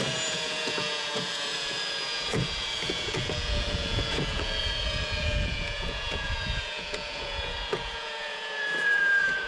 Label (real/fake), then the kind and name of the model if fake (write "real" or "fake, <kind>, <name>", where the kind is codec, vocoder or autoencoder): fake, vocoder, Vocos